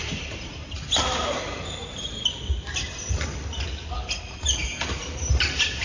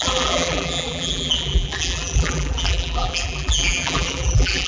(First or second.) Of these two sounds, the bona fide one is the first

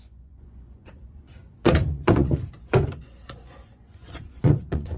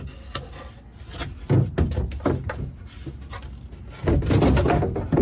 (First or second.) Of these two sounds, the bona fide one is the second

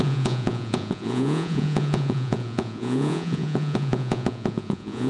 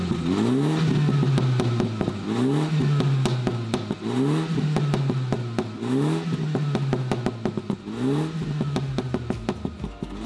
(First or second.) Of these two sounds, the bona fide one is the second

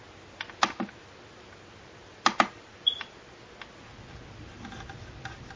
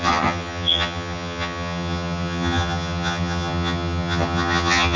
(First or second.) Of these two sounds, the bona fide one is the first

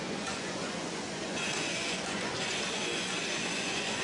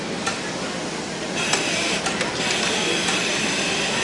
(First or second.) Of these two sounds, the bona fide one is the second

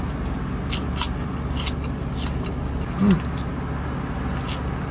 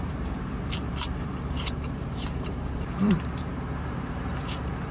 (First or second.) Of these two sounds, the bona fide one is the first